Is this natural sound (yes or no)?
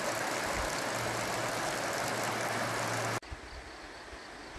yes